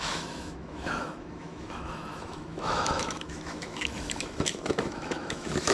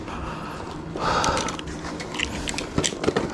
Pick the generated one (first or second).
first